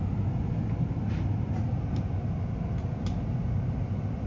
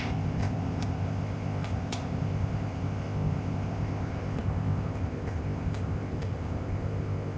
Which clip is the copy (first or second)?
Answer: second